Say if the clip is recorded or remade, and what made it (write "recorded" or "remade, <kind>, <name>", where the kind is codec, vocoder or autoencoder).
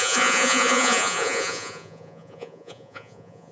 remade, vocoder, Vocos